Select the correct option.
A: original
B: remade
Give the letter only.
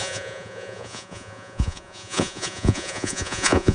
B